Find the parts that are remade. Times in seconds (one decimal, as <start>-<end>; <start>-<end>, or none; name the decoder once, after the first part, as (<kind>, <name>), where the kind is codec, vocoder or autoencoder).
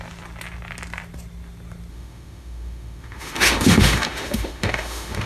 1.9-5.3 (autoencoder, DAC-VAE)